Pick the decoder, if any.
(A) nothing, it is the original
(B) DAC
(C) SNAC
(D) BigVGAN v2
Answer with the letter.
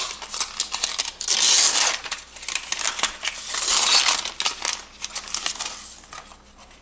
A